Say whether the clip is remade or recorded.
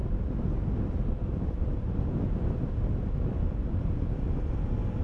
recorded